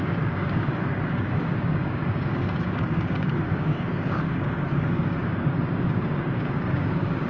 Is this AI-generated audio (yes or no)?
yes